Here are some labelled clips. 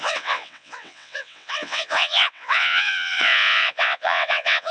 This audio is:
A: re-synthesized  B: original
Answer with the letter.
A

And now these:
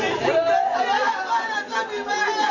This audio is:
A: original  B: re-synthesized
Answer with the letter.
A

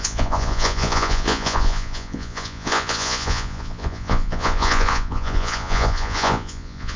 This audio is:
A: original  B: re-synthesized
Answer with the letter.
B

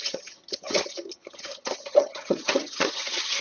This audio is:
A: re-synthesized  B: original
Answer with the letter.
A